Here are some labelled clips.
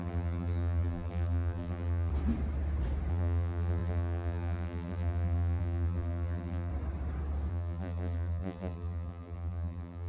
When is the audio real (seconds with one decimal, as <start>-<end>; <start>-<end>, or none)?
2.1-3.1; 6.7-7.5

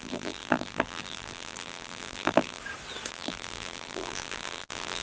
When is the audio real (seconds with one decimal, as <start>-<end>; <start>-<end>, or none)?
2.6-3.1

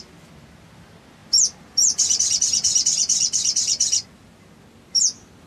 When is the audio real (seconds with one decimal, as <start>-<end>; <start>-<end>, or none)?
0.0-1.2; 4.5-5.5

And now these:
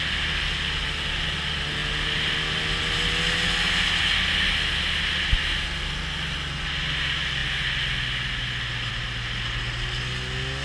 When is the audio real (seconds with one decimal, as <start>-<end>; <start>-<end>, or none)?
0.0-10.6